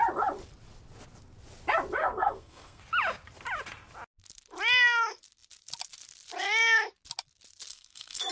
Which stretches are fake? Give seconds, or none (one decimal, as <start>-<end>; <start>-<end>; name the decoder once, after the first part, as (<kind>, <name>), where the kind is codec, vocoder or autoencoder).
2.0-2.8 (codec, SNAC); 7.7-8.3